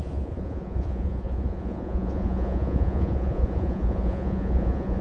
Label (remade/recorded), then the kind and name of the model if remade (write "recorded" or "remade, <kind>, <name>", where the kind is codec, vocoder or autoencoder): remade, vocoder, Vocos